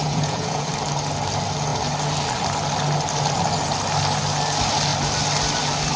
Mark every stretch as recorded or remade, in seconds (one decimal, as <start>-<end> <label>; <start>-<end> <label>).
0.0-0.7 remade; 0.7-6.0 recorded